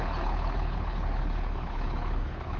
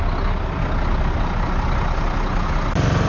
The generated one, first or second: first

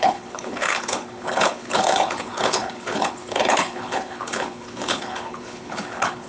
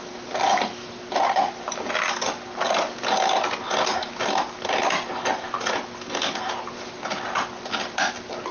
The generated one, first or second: first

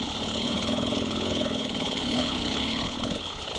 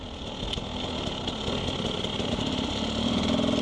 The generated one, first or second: first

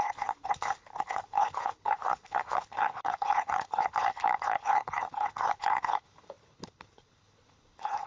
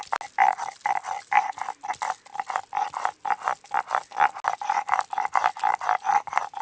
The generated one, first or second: first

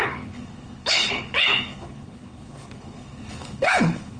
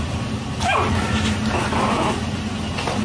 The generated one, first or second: first